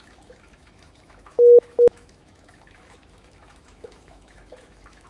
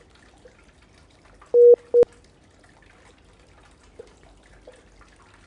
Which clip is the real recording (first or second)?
second